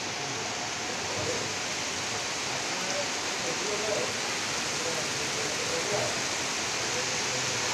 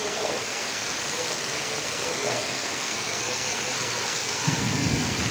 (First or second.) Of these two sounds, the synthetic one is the second